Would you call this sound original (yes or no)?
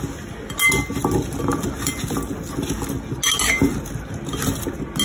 yes